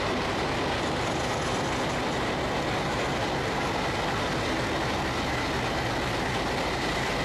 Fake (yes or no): no